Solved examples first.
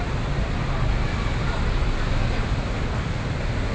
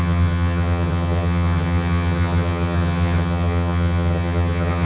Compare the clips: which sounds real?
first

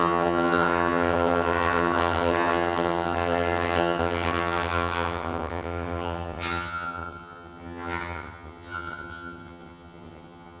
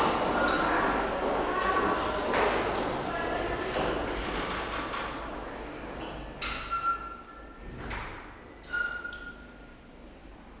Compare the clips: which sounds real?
second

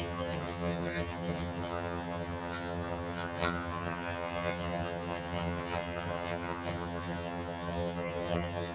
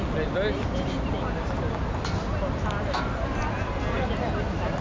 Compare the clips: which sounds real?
second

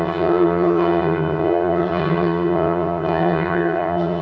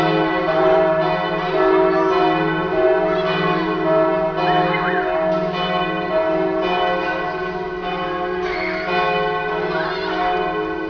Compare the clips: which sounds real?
second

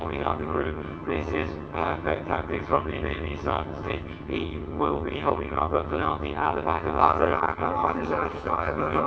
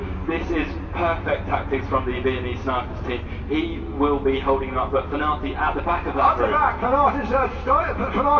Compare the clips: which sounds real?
second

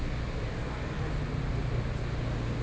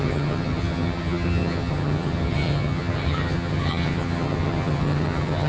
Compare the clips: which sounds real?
first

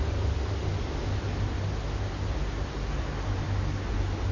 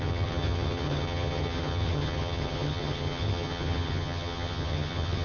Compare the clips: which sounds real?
first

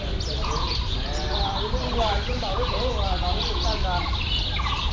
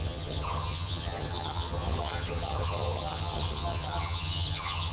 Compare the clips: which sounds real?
first